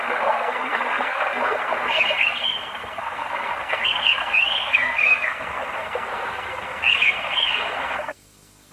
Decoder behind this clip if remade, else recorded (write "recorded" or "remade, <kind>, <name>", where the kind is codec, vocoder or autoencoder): remade, codec, SNAC